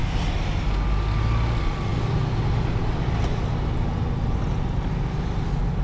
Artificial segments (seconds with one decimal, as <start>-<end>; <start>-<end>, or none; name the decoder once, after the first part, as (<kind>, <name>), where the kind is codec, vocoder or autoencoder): none